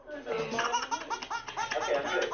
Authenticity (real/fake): real